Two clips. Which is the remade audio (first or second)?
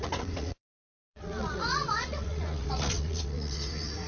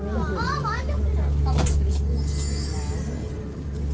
first